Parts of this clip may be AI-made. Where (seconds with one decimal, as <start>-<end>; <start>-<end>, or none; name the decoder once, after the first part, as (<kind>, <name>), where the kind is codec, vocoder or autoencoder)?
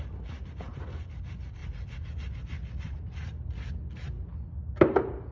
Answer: none